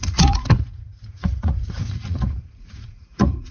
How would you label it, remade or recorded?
remade